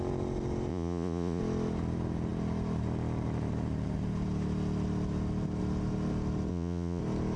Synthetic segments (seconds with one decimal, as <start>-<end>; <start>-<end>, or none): 0.7-1.4; 6.5-7.0